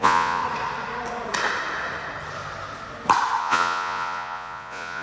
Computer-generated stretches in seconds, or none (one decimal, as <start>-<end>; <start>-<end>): 0.0-0.4; 3.4-5.0